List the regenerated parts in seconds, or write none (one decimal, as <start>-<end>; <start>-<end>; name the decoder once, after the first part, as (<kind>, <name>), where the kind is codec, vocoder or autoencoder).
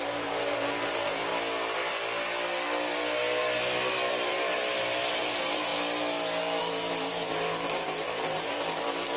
0.0-1.3 (vocoder, BigVGAN v2); 4.1-4.6; 5.2-5.7; 6.6-9.2